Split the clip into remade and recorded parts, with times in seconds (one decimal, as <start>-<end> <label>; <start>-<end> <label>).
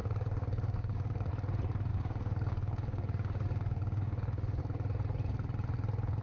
0.0-1.3 remade; 1.3-1.9 recorded; 1.9-4.6 remade; 4.6-6.2 recorded